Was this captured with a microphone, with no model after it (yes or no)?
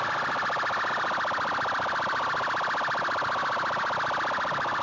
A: yes